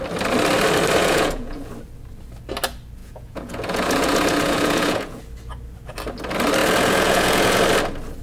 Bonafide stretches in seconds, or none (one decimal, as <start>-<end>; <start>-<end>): 0.0-1.0; 1.7-3.0; 5.2-6.6; 7.6-8.2